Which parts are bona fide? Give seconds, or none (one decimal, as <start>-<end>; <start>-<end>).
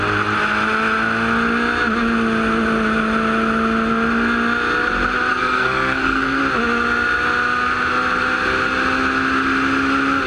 0.0-5.3; 6.4-10.3